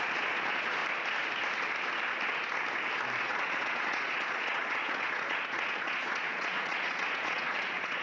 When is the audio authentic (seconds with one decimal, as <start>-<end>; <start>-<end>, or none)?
0.8-3.2